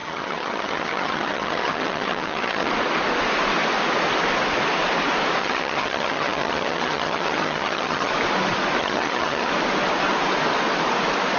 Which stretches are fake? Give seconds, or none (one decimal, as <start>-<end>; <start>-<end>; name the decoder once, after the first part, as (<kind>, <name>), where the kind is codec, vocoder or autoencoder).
0.0-2.7 (vocoder, HiFi-GAN); 5.4-8.1; 8.8-9.5